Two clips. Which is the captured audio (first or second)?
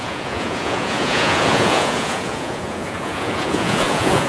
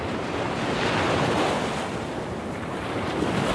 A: second